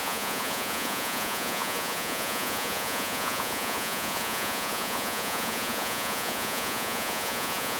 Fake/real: fake